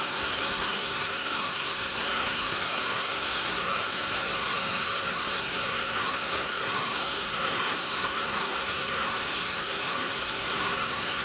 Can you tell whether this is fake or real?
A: fake